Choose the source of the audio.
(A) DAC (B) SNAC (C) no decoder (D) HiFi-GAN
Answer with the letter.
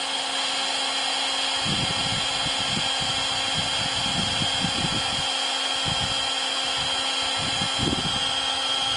C